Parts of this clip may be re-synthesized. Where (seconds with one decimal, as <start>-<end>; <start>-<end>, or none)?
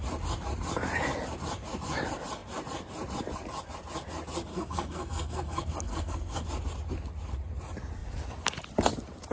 4.5-6.5